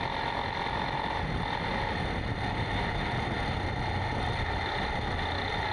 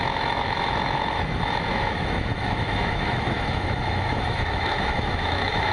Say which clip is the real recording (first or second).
first